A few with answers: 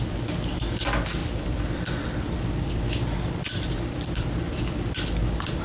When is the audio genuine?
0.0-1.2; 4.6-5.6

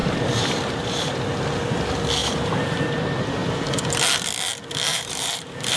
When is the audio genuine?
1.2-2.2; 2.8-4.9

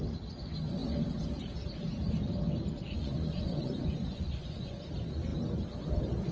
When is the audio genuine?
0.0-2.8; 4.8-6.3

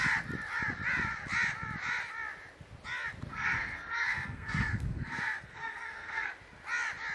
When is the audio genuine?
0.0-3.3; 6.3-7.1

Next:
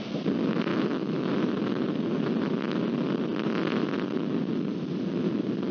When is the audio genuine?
0.0-0.7; 1.3-5.7

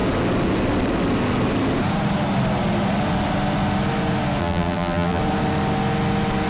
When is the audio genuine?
0.0-4.4; 5.2-6.5